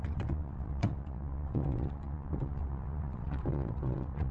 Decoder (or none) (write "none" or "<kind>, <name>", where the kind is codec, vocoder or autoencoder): vocoder, WaveNeXt